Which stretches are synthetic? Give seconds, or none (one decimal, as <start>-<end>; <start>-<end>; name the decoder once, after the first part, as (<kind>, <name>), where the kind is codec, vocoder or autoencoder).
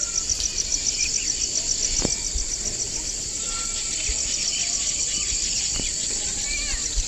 none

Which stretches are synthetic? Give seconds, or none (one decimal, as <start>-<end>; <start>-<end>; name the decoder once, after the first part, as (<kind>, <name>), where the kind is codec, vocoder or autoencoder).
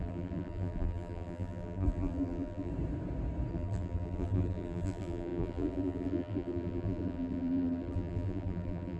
0.0-2.7 (vocoder, BigVGAN v2); 3.5-9.0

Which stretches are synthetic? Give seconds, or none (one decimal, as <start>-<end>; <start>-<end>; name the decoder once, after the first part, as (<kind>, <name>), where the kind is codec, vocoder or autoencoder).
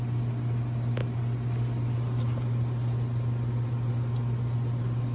none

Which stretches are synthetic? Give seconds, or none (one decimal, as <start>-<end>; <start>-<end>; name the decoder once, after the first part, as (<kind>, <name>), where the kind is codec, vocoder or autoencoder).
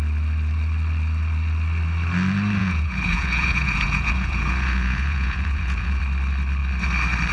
2.6-6.0 (vocoder, Vocos)